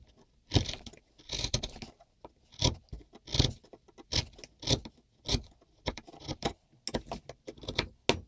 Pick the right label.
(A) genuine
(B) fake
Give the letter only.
A